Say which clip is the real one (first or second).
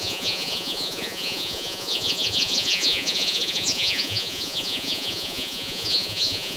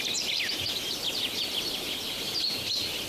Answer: second